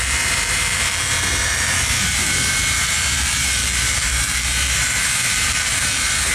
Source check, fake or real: fake